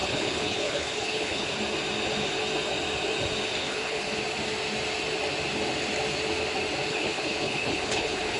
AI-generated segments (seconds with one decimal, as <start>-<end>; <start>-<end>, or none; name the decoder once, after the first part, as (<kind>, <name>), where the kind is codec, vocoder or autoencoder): 0.0-1.5 (codec, HILCodec); 3.6-4.2; 6.9-8.4